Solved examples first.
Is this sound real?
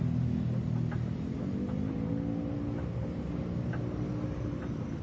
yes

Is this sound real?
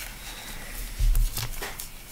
yes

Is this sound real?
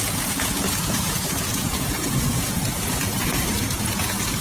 no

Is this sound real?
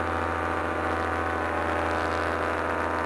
yes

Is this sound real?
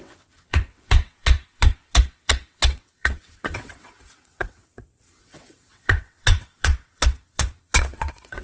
no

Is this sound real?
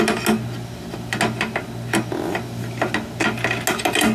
yes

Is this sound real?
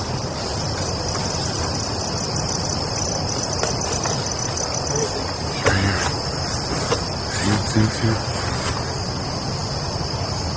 no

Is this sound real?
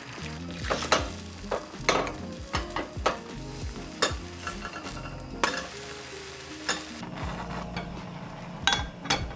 yes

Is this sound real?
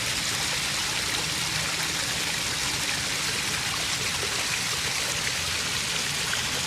yes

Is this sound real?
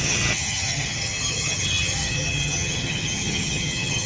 no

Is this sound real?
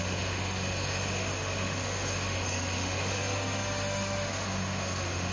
no